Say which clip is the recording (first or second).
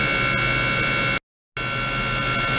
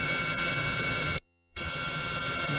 first